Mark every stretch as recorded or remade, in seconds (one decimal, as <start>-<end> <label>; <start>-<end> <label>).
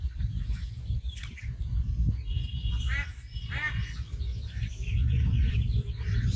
0.0-2.0 remade; 2.0-4.7 recorded; 4.7-6.4 remade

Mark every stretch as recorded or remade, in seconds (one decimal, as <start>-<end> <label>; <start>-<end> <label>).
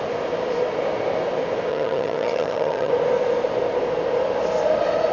0.0-1.7 recorded; 1.7-2.9 remade; 2.9-5.1 recorded